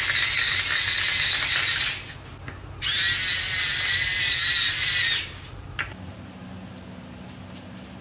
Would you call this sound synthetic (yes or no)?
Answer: no